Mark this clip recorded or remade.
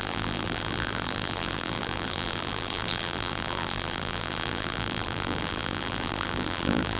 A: remade